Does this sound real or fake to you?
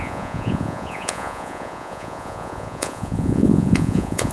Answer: fake